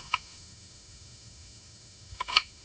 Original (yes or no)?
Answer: no